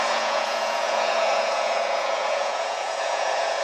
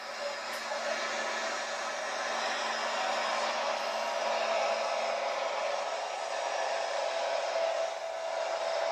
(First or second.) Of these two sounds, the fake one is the first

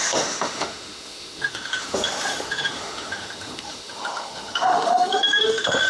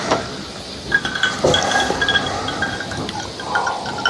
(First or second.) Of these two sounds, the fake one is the first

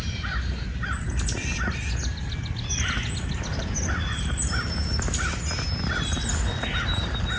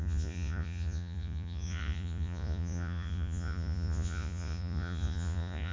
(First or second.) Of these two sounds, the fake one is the second